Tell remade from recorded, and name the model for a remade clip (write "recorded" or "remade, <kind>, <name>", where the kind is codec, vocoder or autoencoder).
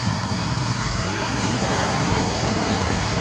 remade, codec, SNAC